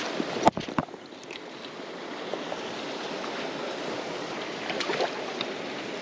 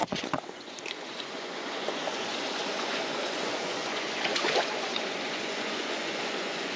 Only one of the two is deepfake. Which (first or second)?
second